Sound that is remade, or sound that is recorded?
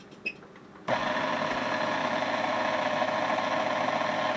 recorded